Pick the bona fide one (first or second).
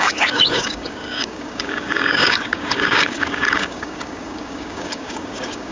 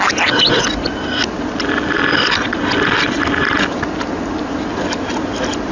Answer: second